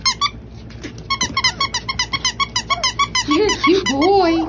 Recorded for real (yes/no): yes